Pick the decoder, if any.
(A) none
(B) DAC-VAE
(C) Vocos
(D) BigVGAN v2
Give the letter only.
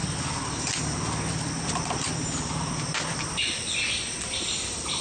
A